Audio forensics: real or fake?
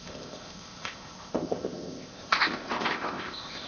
fake